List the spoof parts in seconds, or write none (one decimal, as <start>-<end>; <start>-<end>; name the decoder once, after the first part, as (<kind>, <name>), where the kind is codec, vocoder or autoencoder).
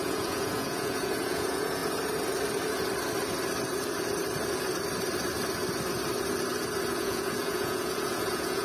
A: 0.0-1.8 (vocoder, Vocos); 7.0-8.6